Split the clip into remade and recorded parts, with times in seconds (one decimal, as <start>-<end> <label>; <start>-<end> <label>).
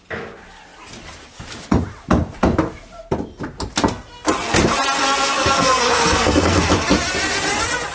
0.0-5.0 recorded; 5.0-6.6 remade; 6.6-7.9 recorded